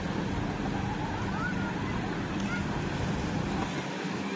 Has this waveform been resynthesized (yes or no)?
no